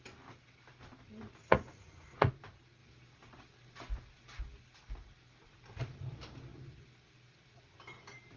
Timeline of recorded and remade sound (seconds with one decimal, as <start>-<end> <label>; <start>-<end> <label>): 0.0-1.4 recorded; 1.4-2.3 remade; 2.3-8.4 recorded